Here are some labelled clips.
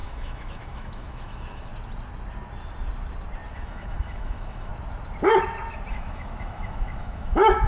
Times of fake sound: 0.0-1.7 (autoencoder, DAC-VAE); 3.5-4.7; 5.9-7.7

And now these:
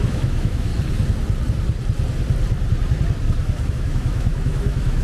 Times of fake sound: 0.0-0.7 (autoencoder, DAC-VAE); 3.7-5.0

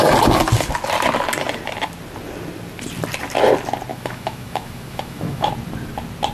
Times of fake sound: 3.9-5.5 (autoencoder, DAC-VAE)

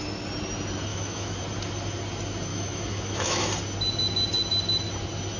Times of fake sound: 0.9-1.4 (autoencoder, DAC-VAE); 2.5-3.5

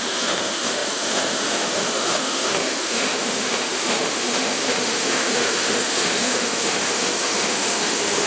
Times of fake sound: 0.0-8.3 (autoencoder, DAC-VAE)

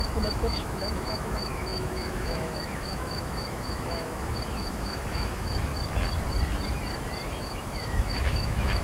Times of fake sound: 0.0-5.7 (autoencoder, DAC-VAE); 7.3-8.8

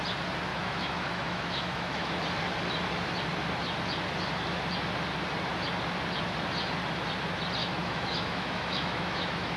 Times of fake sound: 0.5-2.2 (autoencoder, DAC-VAE); 7.6-9.6